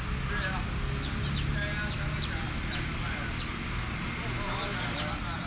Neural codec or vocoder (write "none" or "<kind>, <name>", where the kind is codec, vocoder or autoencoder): none